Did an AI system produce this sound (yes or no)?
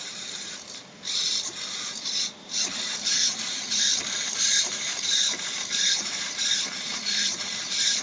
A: yes